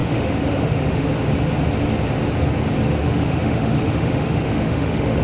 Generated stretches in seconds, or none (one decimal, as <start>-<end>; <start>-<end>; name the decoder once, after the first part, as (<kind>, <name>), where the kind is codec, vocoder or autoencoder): 0.0-1.1 (autoencoder, DAC-VAE); 3.0-5.2